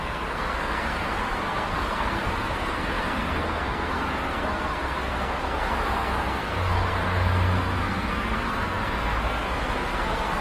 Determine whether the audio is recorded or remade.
remade